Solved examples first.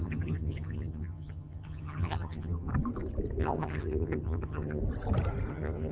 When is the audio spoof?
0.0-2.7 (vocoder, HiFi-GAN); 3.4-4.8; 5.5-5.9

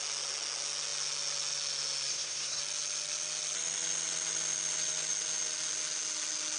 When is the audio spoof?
2.1-2.6 (codec, SNAC)

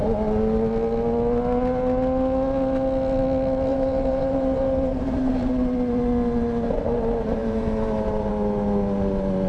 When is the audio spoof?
3.7-5.5 (vocoder, BigVGAN v2); 7.4-8.3

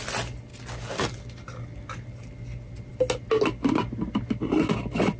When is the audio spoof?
none

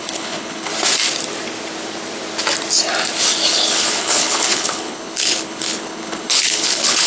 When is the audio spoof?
0.0-0.7 (codec, HILCodec); 3.5-7.1

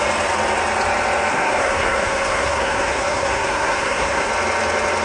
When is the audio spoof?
1.3-4.3 (codec, SNAC)